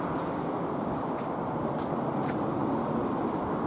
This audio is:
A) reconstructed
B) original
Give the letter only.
B